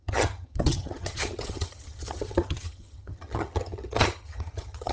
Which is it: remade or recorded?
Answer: remade